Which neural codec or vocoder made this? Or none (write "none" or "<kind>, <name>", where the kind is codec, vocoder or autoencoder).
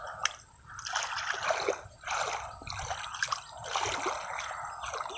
none